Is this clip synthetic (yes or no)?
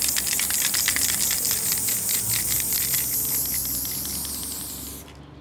no